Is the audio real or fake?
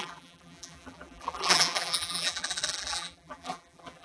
fake